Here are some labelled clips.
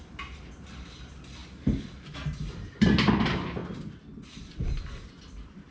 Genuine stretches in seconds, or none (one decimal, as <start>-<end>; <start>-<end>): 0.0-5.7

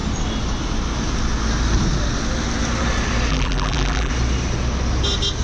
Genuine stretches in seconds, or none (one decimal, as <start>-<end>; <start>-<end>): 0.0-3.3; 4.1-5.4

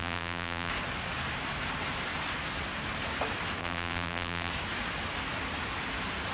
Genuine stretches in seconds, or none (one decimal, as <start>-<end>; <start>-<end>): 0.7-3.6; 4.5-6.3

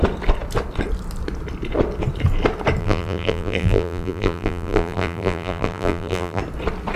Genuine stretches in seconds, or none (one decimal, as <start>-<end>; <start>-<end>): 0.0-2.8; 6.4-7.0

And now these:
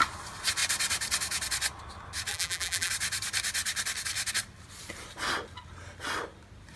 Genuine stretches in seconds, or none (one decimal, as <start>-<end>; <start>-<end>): 0.0-2.3; 2.9-6.8

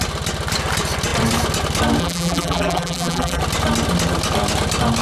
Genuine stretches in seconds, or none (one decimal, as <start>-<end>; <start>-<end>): 0.0-2.0; 3.4-5.0